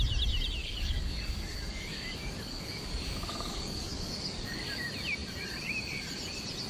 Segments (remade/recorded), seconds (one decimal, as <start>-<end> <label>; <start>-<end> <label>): 0.0-0.6 recorded; 0.6-4.6 remade; 4.6-6.7 recorded